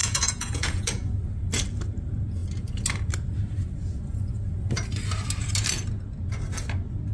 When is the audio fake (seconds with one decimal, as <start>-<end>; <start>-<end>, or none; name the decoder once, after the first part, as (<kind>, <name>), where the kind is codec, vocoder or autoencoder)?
0.0-1.1 (vocoder, Vocos)

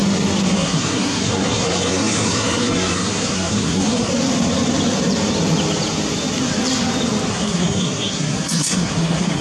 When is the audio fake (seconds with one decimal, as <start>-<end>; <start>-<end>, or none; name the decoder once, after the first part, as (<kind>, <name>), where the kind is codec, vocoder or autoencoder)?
0.5-4.1 (codec, SNAC); 7.3-9.4

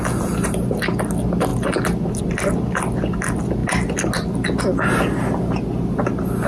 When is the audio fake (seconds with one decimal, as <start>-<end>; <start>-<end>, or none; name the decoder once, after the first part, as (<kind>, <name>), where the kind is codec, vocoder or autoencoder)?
none

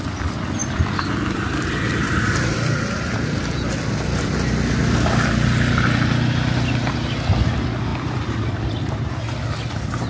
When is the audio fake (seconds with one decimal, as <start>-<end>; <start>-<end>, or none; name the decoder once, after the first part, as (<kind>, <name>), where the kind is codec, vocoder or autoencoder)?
0.6-4.3 (vocoder, BigVGAN v2); 7.9-8.7

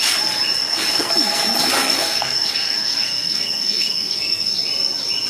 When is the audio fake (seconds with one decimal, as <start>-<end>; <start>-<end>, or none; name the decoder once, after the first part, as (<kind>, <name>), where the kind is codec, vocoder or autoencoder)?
0.6-1.4 (codec, SNAC); 1.8-4.5

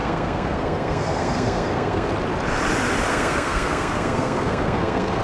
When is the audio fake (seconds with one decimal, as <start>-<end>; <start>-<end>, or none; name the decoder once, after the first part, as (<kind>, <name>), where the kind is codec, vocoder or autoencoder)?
0.0-2.1 (codec, SNAC); 3.1-5.2

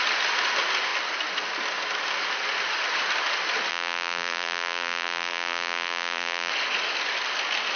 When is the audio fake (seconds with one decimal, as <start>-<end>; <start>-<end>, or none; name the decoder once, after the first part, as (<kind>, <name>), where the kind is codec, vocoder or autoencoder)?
3.7-6.5 (vocoder, BigVGAN v2)

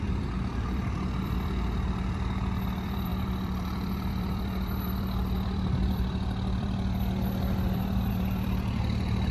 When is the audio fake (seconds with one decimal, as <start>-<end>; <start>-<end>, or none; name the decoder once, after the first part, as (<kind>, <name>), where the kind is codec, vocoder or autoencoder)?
0.0-9.3 (vocoder, BigVGAN v2)